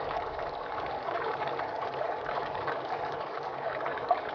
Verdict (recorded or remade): remade